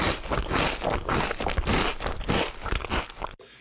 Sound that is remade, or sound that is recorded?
recorded